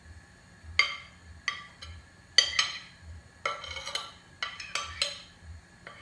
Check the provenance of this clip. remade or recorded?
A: recorded